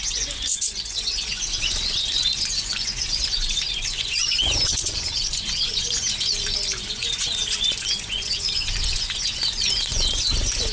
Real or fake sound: fake